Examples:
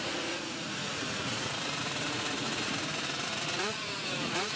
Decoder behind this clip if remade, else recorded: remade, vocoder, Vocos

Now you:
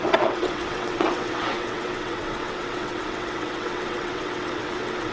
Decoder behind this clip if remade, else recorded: remade, vocoder, WaveNeXt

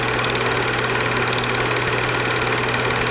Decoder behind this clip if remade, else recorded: remade, vocoder, BigVGAN v2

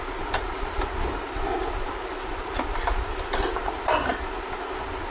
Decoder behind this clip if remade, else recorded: recorded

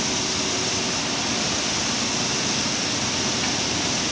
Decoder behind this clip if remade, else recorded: recorded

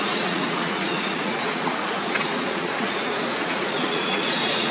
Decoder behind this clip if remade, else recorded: remade, vocoder, Vocos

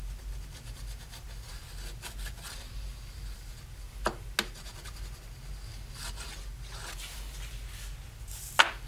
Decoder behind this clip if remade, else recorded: recorded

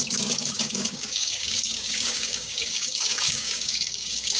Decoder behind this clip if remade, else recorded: remade, codec, DAC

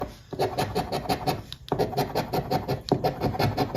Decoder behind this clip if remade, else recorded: recorded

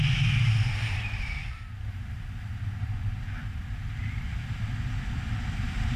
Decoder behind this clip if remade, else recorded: recorded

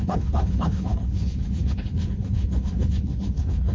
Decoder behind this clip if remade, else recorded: remade, codec, HILCodec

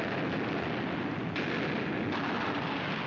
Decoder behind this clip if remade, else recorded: recorded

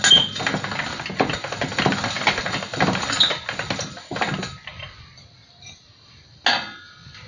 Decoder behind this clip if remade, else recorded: recorded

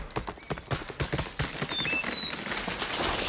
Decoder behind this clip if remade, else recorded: recorded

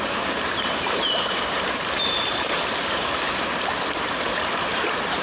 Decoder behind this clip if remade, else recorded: remade, vocoder, BigVGAN v2